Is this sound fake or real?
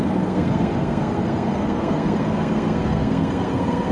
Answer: fake